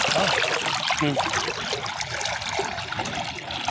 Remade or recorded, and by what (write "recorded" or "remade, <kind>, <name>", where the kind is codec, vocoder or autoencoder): recorded